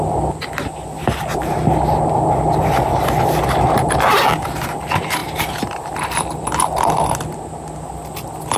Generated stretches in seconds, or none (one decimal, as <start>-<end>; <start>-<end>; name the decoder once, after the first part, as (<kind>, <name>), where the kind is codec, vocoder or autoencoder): none